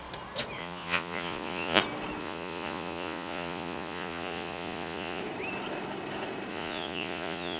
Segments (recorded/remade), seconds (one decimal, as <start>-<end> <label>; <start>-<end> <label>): 0.0-0.6 recorded; 0.6-1.8 remade; 1.8-2.2 recorded; 2.2-5.2 remade; 5.2-6.5 recorded; 6.5-7.6 remade